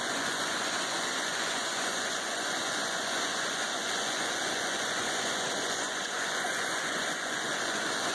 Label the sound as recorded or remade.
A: remade